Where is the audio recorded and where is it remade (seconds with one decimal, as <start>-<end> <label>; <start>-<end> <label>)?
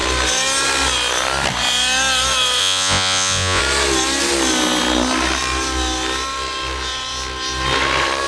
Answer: 0.0-2.6 recorded; 2.6-3.6 remade; 3.6-8.3 recorded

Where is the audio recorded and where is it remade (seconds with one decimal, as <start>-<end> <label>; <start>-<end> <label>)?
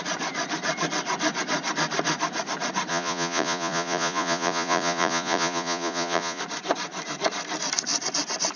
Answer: 0.0-2.9 recorded; 2.9-6.4 remade; 6.4-8.6 recorded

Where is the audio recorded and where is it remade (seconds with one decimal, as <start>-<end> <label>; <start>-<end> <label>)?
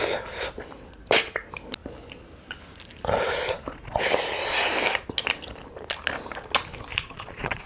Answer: 0.0-6.9 recorded; 6.9-7.7 remade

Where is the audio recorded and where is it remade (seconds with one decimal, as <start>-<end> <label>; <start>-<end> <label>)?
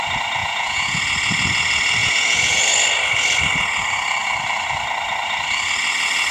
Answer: 0.0-0.4 recorded; 0.4-1.0 remade; 1.0-2.0 recorded; 2.0-2.6 remade; 2.6-6.3 recorded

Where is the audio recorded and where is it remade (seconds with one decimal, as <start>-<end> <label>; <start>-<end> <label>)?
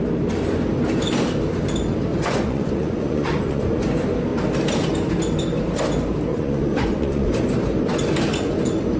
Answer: 0.0-2.1 recorded; 2.1-3.8 remade; 3.8-6.3 recorded; 6.3-7.3 remade; 7.3-9.0 recorded